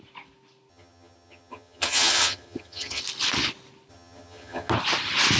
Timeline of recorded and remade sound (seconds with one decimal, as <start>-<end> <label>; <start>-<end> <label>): 0.0-0.7 recorded; 0.7-3.0 remade; 3.0-3.9 recorded; 3.9-4.7 remade; 4.7-5.4 recorded